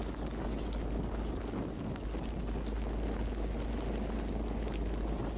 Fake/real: real